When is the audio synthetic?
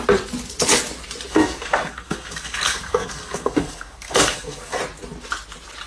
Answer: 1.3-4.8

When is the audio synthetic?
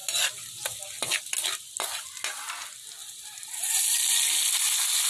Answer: 3.0-3.8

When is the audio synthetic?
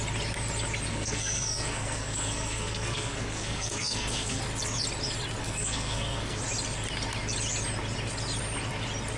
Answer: 0.9-4.4; 5.4-6.4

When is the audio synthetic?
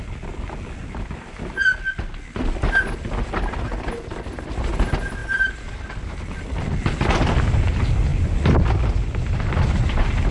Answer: 5.2-6.4; 8.1-8.6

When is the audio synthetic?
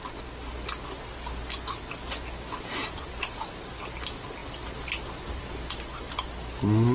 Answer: none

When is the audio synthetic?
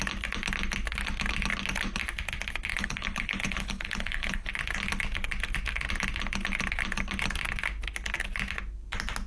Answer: 2.7-4.5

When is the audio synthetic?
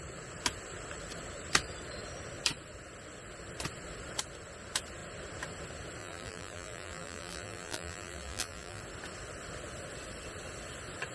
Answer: 6.0-8.8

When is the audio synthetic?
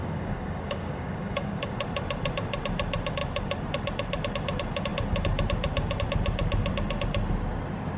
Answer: 0.0-1.7